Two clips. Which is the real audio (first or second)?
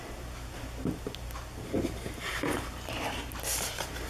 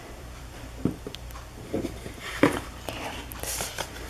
first